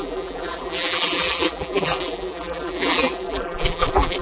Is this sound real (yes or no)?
no